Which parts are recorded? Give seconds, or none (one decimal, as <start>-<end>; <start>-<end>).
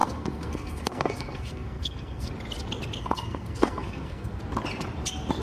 2.3-3.0; 4.4-5.4